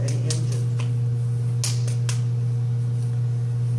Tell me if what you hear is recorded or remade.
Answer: recorded